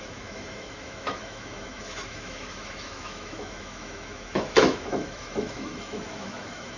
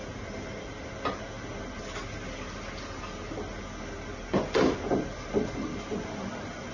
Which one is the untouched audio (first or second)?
second